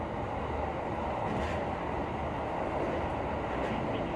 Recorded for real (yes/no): yes